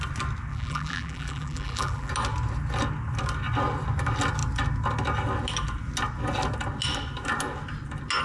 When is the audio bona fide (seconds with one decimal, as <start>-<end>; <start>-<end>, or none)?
0.0-0.5; 2.1-8.2